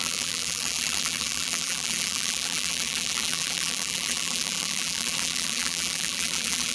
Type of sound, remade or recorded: remade